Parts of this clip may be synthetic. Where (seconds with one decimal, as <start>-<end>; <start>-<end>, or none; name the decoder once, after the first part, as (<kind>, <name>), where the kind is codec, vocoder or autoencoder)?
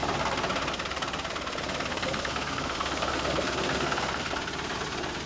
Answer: 1.9-4.3 (codec, SNAC)